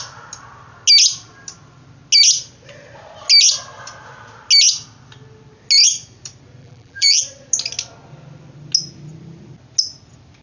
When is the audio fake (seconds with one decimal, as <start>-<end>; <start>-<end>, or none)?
6.6-7.2